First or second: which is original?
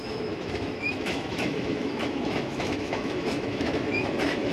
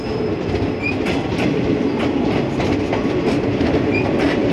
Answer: second